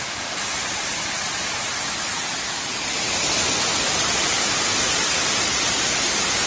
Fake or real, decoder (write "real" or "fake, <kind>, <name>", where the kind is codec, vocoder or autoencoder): real